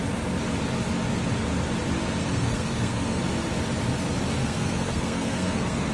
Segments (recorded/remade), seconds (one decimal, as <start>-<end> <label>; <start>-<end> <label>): 0.0-2.2 recorded; 2.2-3.2 remade; 3.2-4.4 recorded; 4.4-5.9 remade